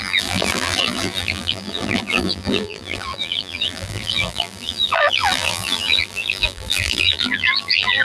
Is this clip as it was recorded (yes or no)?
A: no